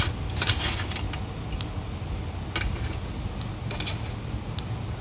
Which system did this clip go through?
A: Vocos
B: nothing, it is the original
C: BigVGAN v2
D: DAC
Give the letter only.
B